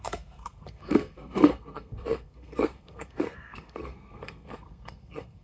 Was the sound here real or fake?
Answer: fake